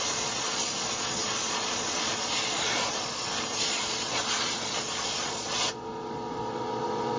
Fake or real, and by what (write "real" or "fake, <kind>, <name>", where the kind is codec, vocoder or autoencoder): fake, vocoder, Vocos